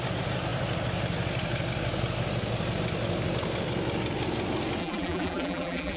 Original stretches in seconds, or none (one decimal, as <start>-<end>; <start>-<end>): 0.0-4.8